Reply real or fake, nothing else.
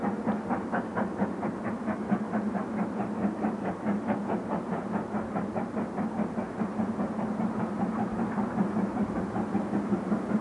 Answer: real